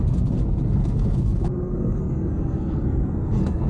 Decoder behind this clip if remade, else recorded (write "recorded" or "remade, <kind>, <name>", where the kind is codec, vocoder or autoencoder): remade, codec, SNAC